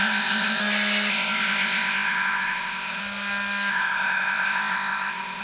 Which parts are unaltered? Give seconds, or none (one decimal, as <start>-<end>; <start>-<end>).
0.6-1.1; 3.0-3.7

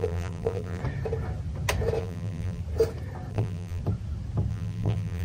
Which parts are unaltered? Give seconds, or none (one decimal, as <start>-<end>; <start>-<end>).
0.8-2.0; 2.6-3.3; 3.8-4.5

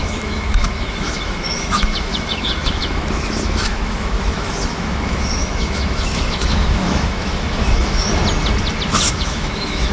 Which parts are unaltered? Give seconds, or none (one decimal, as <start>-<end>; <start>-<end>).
8.2-8.9

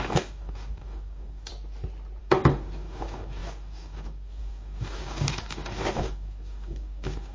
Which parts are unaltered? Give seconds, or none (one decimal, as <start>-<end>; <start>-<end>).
1.5-2.2